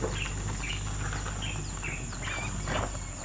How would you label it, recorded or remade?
recorded